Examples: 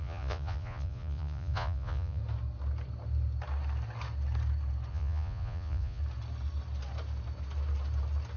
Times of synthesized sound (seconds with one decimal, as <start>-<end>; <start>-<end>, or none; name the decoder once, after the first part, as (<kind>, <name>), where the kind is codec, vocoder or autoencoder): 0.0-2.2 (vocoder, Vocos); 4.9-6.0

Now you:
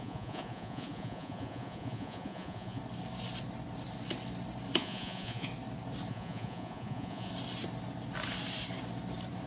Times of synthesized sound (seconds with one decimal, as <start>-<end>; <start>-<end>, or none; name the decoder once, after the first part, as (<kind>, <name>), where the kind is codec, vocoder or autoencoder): 0.0-2.8 (vocoder, Vocos); 4.8-5.5; 6.1-7.3

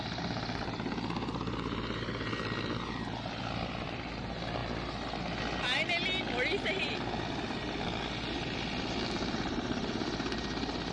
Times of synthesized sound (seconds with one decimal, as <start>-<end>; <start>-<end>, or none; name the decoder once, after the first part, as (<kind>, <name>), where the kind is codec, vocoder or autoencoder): none

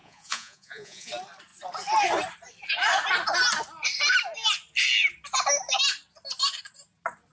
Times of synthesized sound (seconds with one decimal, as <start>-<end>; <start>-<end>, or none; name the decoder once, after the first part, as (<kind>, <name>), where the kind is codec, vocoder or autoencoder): 0.0-1.1 (vocoder, Vocos)

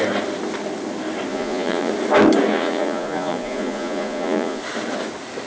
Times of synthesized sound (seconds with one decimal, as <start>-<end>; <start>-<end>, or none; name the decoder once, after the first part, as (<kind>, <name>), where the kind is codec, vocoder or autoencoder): 1.3-1.9 (vocoder, Vocos); 2.5-4.6

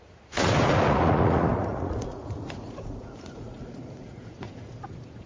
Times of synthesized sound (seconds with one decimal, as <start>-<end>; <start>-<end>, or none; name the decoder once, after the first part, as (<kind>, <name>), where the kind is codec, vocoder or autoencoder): 0.0-5.3 (vocoder, Vocos)

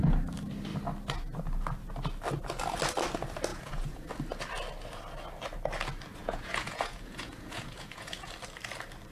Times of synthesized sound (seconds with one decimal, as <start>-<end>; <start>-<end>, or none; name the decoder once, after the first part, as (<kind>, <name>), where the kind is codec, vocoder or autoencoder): 3.5-4.1 (vocoder, Vocos); 6.2-8.3